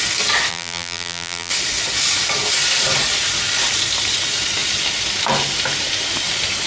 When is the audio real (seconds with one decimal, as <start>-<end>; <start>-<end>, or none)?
0.0-0.5; 1.5-6.7